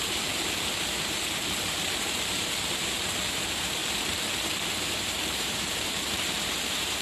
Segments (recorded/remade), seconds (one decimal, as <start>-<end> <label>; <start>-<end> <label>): 0.0-3.8 remade; 3.8-4.8 recorded; 4.8-7.0 remade

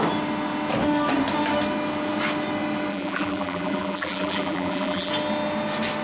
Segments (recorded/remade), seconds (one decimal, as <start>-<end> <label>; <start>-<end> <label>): 0.0-2.9 recorded; 2.9-5.1 remade; 5.1-6.0 recorded

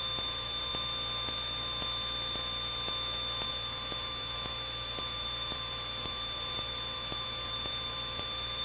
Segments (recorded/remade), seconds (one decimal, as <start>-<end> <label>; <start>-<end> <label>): 0.0-0.7 remade; 0.7-3.5 recorded; 3.5-8.6 remade

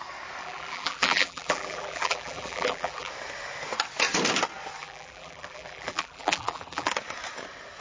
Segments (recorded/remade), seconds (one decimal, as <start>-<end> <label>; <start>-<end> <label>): 0.0-0.4 recorded; 0.4-3.1 remade; 3.1-4.8 recorded; 4.8-6.9 remade; 6.9-7.8 recorded

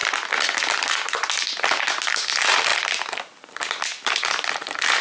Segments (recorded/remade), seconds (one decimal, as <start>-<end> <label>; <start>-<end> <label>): 0.0-2.7 recorded; 2.7-3.2 remade; 3.2-5.0 recorded

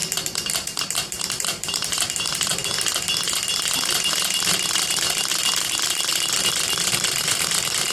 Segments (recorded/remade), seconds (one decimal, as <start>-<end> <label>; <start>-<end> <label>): 0.0-0.8 recorded; 0.8-2.5 remade; 2.5-3.9 recorded; 3.9-7.9 remade

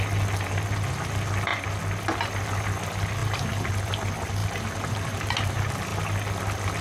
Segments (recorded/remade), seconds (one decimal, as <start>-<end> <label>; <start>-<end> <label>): 0.0-3.2 recorded; 3.2-3.7 remade; 3.7-4.4 recorded; 4.4-5.5 remade; 5.5-6.8 recorded

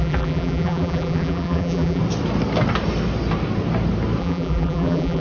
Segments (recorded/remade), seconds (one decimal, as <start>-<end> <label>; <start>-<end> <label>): 0.0-2.0 remade; 2.0-4.2 recorded; 4.2-5.2 remade